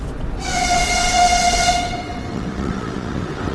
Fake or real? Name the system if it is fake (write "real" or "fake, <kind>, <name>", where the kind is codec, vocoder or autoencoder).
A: fake, vocoder, WaveNeXt